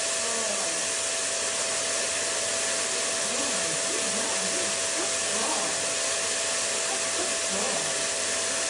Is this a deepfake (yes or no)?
no